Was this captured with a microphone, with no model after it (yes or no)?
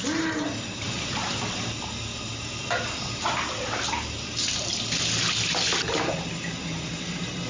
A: yes